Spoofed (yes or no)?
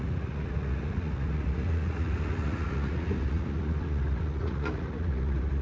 yes